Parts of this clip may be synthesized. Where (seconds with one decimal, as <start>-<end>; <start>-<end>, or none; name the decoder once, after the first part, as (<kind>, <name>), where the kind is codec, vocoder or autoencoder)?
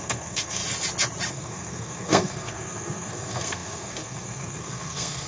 0.0-0.6 (codec, SNAC); 1.3-5.3